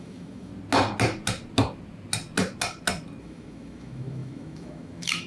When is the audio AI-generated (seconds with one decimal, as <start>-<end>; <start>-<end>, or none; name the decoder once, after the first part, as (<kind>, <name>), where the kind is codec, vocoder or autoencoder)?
0.0-0.5 (autoencoder, DAC-VAE); 3.2-5.3